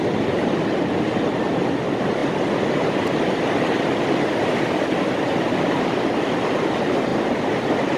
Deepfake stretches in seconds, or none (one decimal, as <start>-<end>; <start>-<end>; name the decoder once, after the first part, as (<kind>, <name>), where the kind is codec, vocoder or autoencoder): none